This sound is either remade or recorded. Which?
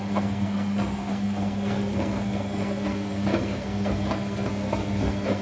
remade